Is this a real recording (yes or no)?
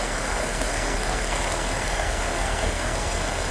no